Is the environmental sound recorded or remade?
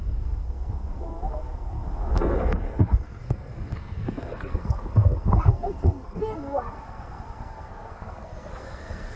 remade